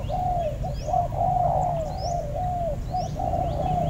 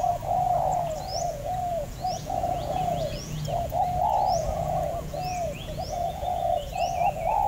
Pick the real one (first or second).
first